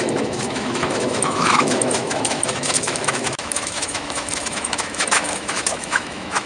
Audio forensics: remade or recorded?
remade